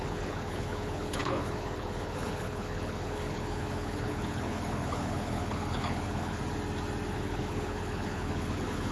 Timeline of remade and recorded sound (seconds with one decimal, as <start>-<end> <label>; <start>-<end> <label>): 0.0-6.4 remade; 6.4-7.1 recorded; 7.1-8.9 remade